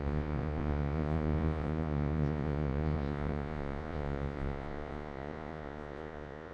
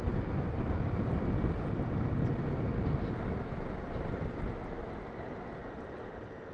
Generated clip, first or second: first